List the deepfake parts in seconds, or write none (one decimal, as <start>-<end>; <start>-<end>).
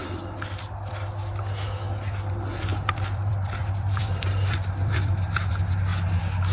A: 2.7-5.5